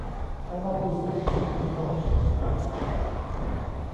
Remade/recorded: remade